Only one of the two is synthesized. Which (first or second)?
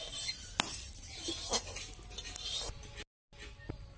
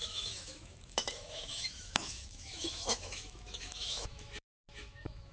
second